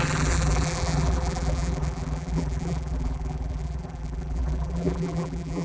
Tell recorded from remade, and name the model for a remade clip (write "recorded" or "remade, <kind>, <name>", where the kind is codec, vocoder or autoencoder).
remade, vocoder, BigVGAN v2